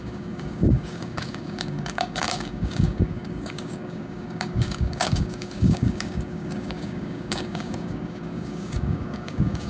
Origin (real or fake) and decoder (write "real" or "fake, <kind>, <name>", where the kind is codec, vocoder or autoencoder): fake, codec, DAC